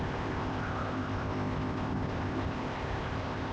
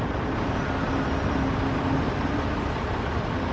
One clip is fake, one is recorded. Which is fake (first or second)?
first